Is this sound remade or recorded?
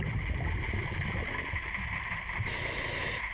recorded